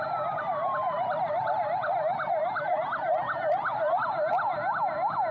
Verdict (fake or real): real